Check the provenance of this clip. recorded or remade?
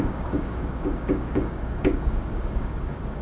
remade